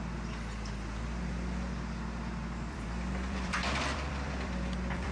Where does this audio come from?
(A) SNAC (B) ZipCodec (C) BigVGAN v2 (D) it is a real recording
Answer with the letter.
C